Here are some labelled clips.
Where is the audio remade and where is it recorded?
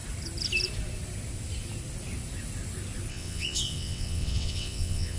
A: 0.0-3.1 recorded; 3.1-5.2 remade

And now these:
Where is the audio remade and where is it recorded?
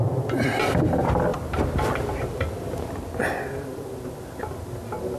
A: 0.0-1.3 recorded; 1.3-4.4 remade; 4.4-5.2 recorded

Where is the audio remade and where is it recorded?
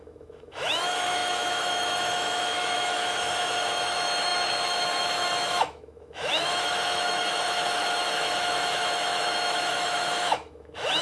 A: 0.0-11.0 remade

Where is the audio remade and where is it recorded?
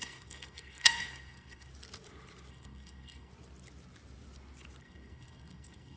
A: 0.0-1.7 remade; 1.7-2.5 recorded; 2.5-3.3 remade; 3.3-4.8 recorded; 4.8-6.0 remade